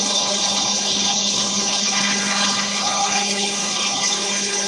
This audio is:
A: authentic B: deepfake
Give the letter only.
B